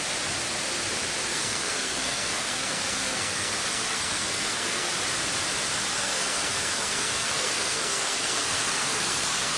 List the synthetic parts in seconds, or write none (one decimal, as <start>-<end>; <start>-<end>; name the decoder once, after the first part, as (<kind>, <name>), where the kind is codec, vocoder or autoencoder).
1.3-4.9 (codec, SNAC); 5.9-9.6